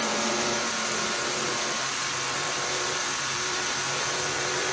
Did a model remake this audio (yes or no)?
yes